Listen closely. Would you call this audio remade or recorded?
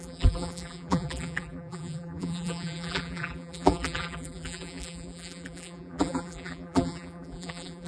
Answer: remade